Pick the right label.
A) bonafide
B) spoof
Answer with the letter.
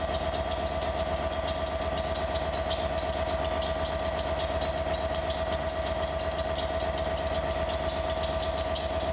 A